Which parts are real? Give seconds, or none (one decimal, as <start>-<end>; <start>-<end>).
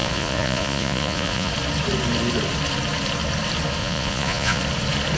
1.5-3.8; 4.6-5.2